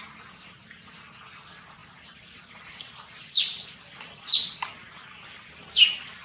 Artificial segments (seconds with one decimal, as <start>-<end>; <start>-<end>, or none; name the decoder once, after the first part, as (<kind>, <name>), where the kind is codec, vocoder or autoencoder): 1.8-5.5 (vocoder, BigVGAN v2)